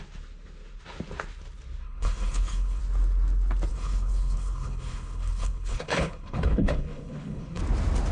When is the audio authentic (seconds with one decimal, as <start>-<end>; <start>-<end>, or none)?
0.0-1.8; 2.8-3.7; 7.6-8.1